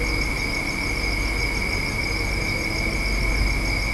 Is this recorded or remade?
recorded